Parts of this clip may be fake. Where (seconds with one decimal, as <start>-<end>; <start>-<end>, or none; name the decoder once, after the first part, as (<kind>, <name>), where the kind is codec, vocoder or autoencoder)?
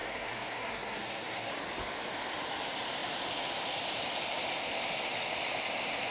0.0-1.5 (codec, SNAC)